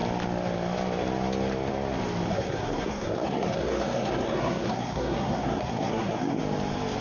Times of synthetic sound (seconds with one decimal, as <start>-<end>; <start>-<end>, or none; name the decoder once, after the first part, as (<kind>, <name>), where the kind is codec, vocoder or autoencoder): 2.3-6.4 (codec, SNAC)